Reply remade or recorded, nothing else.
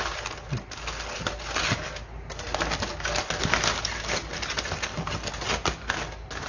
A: recorded